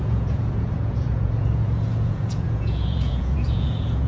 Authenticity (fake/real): fake